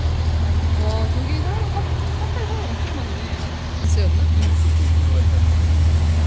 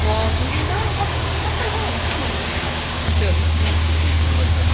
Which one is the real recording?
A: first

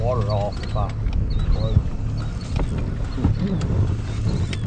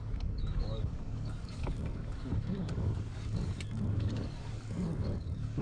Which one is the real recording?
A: first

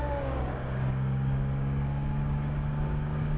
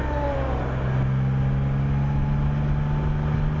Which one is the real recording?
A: second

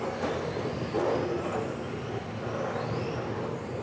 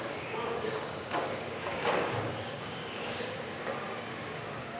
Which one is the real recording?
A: first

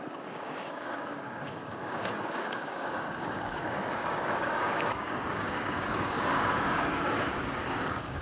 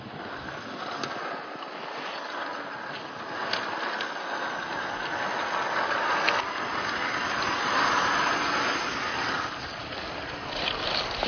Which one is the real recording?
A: second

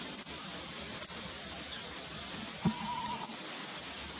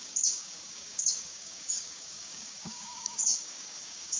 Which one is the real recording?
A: first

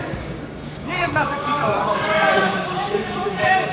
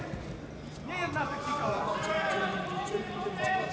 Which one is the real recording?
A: second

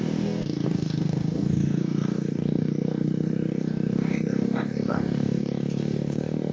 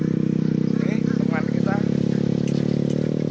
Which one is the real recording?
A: second